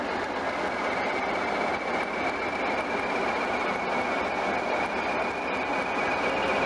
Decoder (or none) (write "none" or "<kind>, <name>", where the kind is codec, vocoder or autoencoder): none